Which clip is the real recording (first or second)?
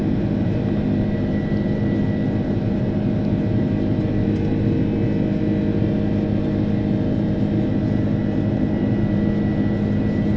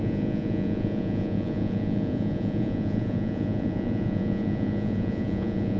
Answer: first